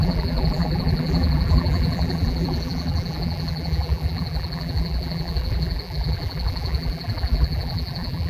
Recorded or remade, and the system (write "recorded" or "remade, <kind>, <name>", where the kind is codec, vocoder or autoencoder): remade, vocoder, BigVGAN v2